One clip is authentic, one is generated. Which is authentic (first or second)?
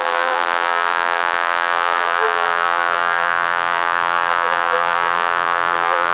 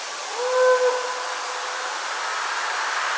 second